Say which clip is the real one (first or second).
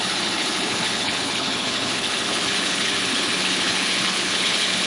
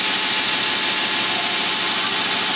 second